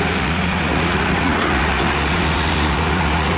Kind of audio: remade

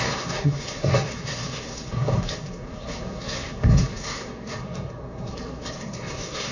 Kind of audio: remade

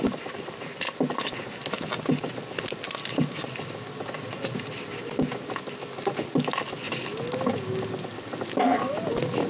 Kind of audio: recorded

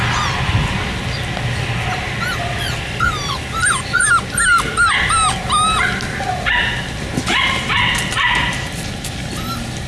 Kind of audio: recorded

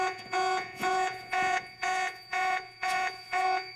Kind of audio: remade